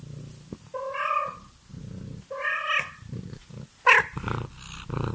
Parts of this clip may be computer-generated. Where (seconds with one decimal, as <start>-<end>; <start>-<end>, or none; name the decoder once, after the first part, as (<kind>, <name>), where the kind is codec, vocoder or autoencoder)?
none